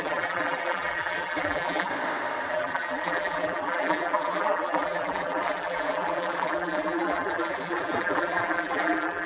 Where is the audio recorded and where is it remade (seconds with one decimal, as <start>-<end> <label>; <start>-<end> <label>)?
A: 0.0-1.9 remade; 1.9-2.5 recorded; 2.5-9.3 remade